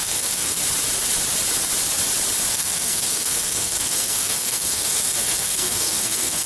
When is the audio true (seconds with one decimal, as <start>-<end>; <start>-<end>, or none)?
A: 0.6-2.5